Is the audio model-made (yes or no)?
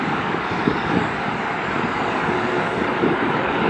yes